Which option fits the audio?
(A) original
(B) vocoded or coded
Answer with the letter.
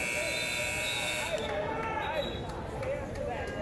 A